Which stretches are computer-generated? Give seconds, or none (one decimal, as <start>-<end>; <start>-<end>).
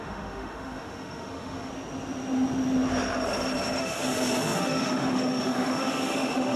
0.0-1.7; 3.8-6.6